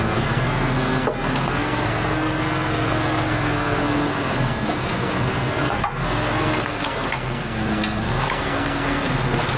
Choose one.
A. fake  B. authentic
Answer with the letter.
A